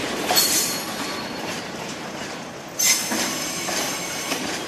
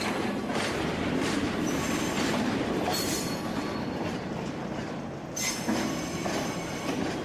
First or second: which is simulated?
first